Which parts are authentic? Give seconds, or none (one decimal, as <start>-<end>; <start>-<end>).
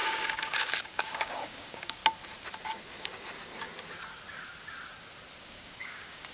2.0-5.4